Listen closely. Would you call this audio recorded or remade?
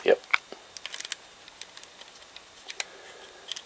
recorded